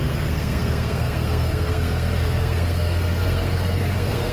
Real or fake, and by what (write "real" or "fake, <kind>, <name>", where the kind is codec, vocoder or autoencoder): fake, codec, SNAC